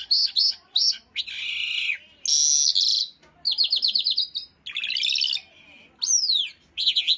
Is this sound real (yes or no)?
yes